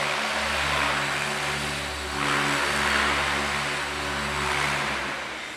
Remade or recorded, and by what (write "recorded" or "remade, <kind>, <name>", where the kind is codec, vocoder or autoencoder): recorded